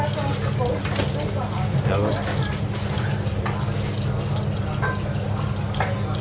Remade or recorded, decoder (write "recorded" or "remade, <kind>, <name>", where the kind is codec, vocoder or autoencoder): recorded